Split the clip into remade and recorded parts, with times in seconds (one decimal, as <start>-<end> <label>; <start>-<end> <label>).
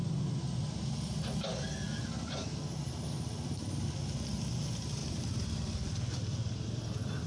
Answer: 0.0-5.0 recorded; 5.0-6.4 remade; 6.4-7.3 recorded